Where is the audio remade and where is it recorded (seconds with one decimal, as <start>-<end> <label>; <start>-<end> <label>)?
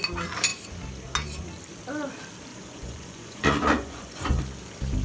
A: 0.0-2.5 recorded; 2.5-4.4 remade; 4.4-5.0 recorded